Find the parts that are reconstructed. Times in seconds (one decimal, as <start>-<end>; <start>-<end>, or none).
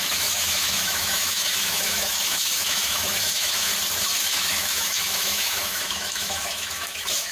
0.0-3.7; 4.2-7.3